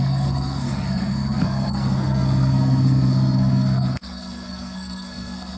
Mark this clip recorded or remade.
remade